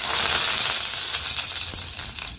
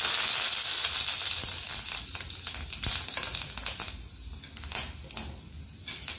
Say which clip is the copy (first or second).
first